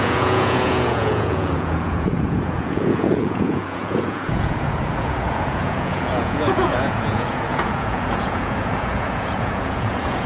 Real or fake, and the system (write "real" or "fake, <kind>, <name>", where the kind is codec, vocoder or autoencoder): fake, vocoder, Vocos